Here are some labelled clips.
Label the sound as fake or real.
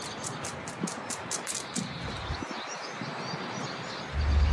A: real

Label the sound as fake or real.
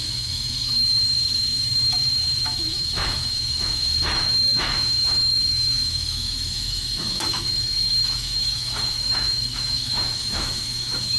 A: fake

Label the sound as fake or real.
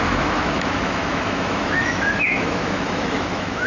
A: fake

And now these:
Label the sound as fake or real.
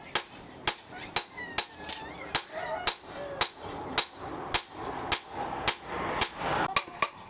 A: real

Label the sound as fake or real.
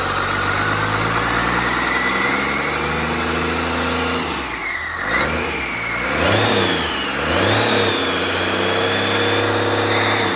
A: real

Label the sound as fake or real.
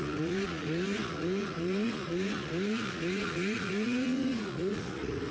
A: fake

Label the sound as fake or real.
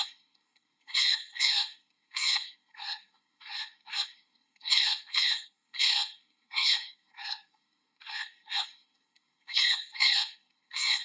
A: fake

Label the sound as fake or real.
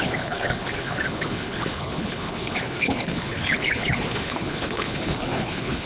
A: fake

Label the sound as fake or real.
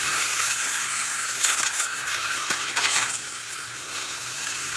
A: fake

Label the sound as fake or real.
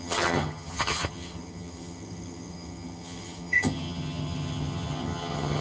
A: fake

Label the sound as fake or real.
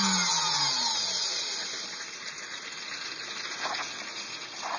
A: real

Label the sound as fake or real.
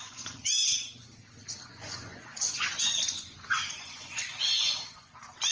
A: fake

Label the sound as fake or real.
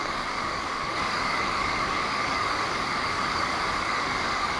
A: fake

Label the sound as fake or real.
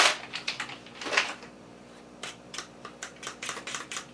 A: fake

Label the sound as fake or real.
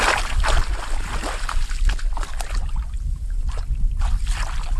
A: real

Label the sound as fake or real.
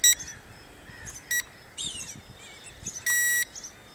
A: real